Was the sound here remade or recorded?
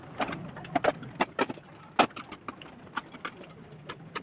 recorded